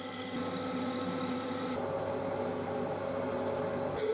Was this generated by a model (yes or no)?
no